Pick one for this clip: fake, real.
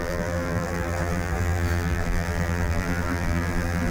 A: fake